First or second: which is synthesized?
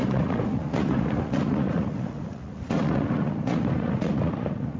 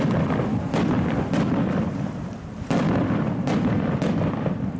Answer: first